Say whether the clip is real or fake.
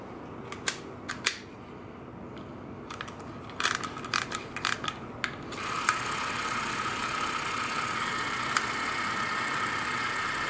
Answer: real